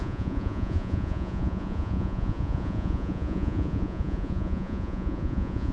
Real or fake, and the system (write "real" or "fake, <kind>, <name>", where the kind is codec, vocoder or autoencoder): fake, vocoder, Vocos